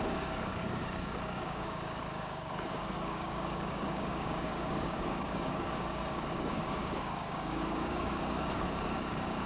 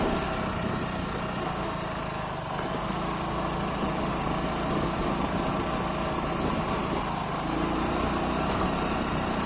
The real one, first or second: second